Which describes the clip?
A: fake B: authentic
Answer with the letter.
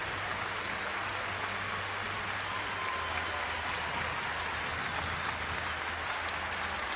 B